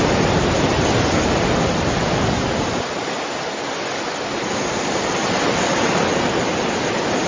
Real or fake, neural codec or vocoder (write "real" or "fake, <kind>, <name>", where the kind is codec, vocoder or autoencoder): real